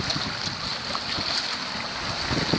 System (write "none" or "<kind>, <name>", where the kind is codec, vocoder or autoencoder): none